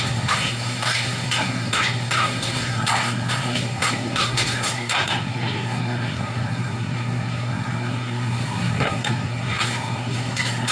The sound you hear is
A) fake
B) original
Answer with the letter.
A